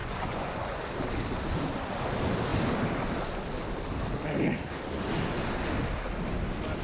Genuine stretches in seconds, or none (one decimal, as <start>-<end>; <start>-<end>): 0.8-6.8